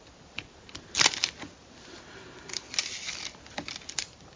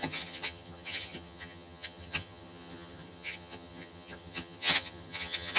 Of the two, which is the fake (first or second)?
second